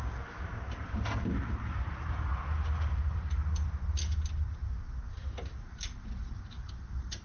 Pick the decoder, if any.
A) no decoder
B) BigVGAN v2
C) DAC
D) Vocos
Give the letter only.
A